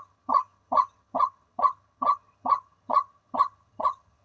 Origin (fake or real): fake